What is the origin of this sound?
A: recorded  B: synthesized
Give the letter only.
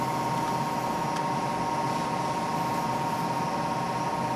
A